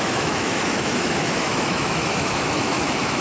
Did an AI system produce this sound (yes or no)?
yes